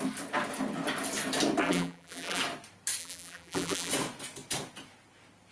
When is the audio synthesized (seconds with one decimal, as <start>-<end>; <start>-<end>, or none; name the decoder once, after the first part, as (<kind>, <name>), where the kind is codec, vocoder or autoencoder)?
1.6-2.4 (vocoder, BigVGAN v2); 3.0-3.9

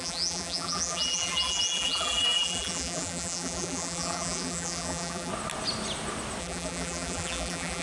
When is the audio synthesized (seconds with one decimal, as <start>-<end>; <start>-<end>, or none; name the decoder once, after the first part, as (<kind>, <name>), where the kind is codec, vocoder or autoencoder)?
0.0-5.3 (vocoder, BigVGAN v2); 6.4-7.8